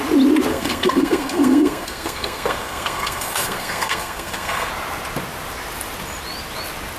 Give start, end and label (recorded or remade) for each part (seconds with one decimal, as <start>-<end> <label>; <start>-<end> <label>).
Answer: 0.0-0.5 recorded; 0.5-4.7 remade; 4.7-7.0 recorded